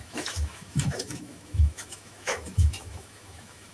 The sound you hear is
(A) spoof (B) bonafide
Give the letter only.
A